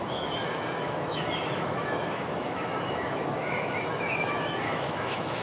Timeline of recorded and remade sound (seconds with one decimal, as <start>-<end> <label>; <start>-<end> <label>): 0.0-5.4 remade